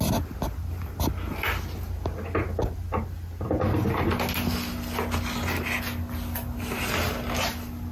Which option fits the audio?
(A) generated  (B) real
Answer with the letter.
B